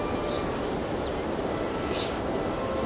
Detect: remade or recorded recorded